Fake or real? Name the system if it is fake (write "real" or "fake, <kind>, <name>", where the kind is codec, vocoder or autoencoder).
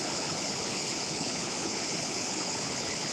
fake, codec, HILCodec